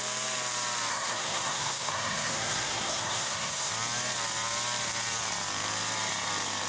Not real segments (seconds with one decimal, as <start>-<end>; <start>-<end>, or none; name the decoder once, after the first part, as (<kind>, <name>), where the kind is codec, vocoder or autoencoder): 0.9-3.7 (codec, SNAC)